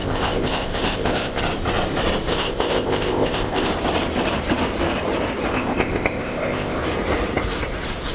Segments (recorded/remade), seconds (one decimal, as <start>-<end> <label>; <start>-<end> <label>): 0.0-1.4 remade; 1.4-2.3 recorded; 2.3-3.7 remade; 3.7-5.5 recorded; 5.5-6.8 remade; 6.8-8.1 recorded